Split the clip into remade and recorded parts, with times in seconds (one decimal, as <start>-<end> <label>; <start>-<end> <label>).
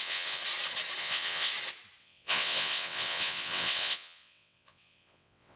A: 0.0-0.4 remade; 0.4-1.0 recorded; 1.0-1.5 remade; 1.5-2.0 recorded; 2.0-5.6 remade